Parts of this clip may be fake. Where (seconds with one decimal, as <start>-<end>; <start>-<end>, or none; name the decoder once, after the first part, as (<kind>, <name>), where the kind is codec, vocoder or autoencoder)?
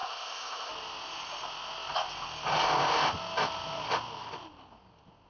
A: 0.0-0.7 (codec, ZipCodec)